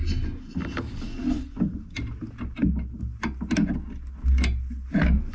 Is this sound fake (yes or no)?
no